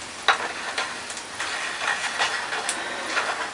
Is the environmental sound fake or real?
real